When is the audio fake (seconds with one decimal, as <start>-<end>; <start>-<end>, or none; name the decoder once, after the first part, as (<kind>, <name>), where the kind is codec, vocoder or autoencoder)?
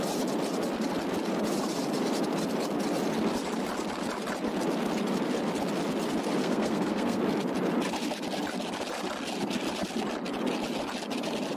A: 6.4-7.2 (codec, SNAC)